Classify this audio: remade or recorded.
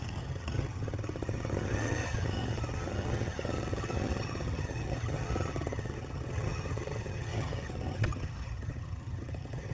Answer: remade